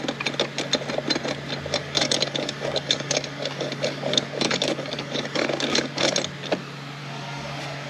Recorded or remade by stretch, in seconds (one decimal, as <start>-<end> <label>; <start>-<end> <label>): 0.0-1.8 recorded; 1.8-6.1 remade; 6.1-7.0 recorded; 7.0-7.9 remade